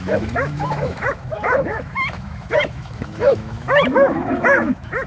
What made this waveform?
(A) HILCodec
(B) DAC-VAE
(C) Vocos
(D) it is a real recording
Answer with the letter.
B